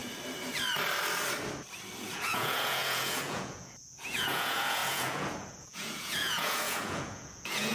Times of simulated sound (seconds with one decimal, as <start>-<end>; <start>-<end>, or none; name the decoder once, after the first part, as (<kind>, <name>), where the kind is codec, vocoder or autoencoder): 2.0-7.7 (vocoder, Vocos)